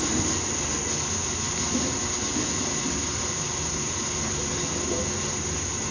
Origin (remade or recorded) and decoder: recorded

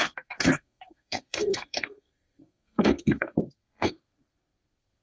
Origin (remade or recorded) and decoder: remade, codec, SNAC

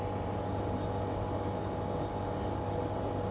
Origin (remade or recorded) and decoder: recorded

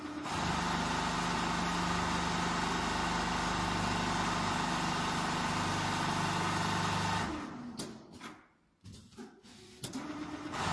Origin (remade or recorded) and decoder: recorded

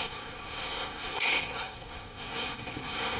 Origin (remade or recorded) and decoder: remade, codec, SNAC